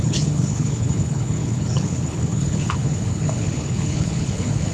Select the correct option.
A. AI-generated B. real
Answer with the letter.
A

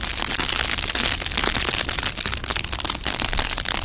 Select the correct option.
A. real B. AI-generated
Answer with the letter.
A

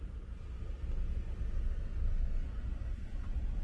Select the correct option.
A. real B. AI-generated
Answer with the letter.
A